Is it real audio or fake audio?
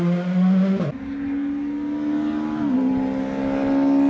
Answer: real